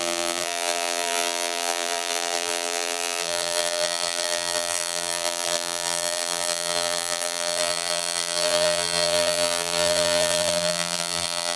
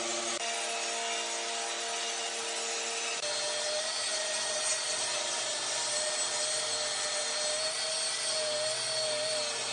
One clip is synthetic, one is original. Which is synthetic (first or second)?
first